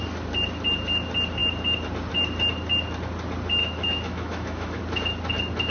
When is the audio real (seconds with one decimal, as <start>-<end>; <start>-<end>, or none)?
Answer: 0.0-3.6; 4.8-5.7